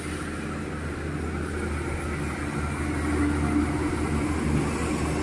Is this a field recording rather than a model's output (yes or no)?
yes